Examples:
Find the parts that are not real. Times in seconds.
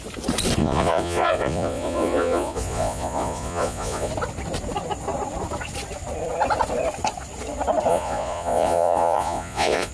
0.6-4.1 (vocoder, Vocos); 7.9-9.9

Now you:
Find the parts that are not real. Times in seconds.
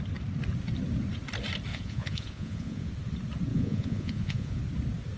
1.7-2.9 (vocoder, Vocos); 3.5-4.6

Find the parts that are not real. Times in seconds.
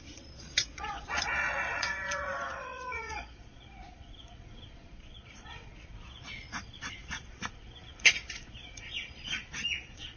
0.0-10.2 (vocoder, Vocos)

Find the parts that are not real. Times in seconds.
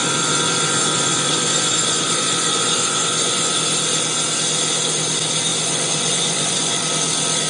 0.0-3.5 (vocoder, Vocos); 5.5-6.8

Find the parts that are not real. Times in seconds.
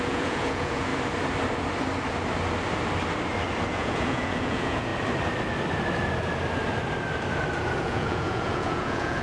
0.0-0.9 (vocoder, Vocos); 3.7-4.9; 7.8-9.2